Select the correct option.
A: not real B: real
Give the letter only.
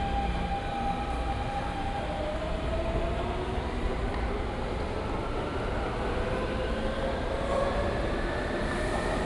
B